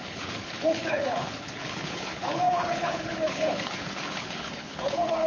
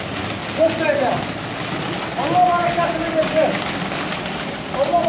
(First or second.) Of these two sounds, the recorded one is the second